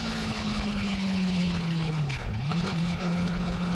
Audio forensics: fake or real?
fake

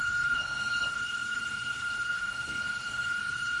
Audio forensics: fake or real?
fake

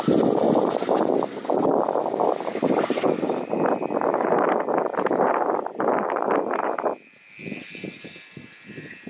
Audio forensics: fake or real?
real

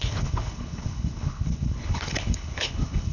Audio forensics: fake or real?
fake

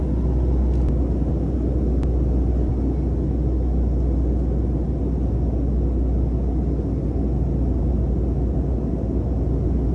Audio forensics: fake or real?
real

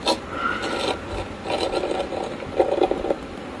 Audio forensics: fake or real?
real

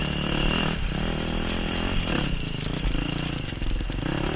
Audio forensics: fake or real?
real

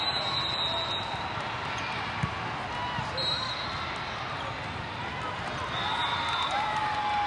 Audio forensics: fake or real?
real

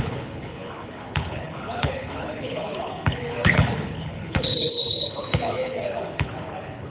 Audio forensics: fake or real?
fake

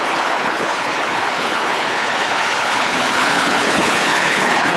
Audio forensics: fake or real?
fake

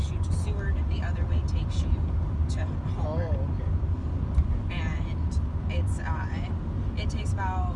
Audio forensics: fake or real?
real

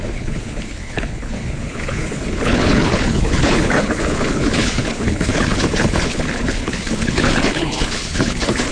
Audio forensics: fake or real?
fake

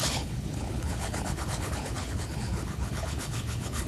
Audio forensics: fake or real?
fake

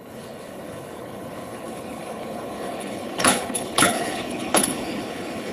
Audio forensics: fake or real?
fake